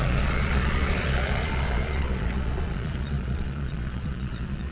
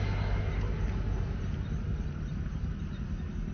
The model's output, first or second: first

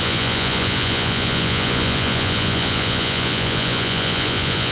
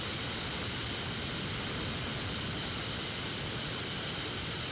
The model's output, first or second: first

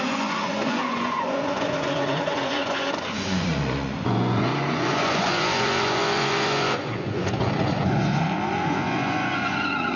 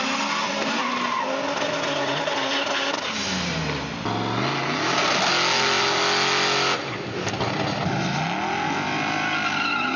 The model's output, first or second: first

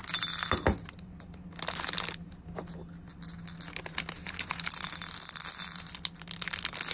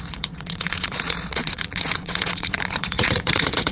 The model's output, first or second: second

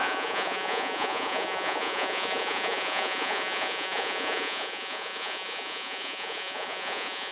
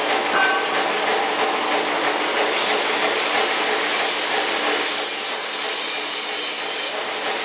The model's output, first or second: first